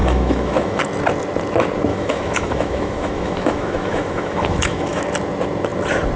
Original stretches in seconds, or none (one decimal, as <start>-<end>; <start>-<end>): 0.8-1.9; 5.0-6.2